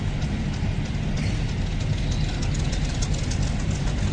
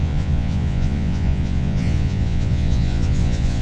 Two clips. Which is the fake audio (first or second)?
second